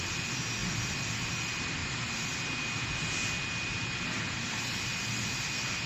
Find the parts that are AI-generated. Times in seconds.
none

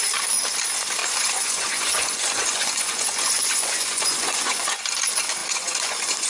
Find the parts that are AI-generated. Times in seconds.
1.0-4.8 (vocoder, Vocos); 5.4-6.3

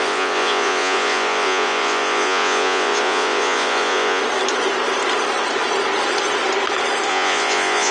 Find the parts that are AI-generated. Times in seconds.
0.0-4.2 (vocoder, Vocos); 7.1-7.9

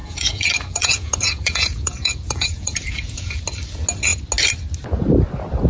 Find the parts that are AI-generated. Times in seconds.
0.0-3.4 (vocoder, Vocos)

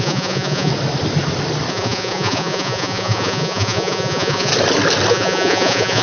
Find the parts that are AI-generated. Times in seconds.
0.0-0.7 (vocoder, Vocos); 1.7-4.5; 5.1-6.0